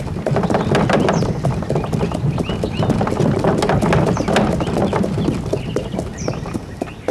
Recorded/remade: recorded